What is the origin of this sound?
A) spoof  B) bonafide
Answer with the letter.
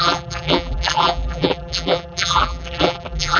A